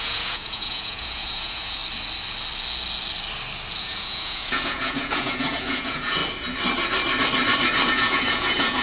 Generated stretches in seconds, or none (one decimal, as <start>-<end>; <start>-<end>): 0.0-1.8; 3.8-6.2; 7.9-8.8